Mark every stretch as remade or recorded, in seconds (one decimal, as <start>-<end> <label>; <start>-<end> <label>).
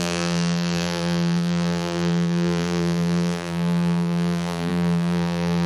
0.0-5.7 remade